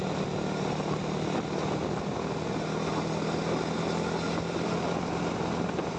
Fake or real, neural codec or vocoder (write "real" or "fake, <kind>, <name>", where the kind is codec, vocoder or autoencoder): real